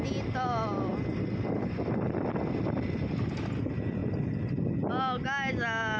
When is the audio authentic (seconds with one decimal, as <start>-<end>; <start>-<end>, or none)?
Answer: 0.0-6.0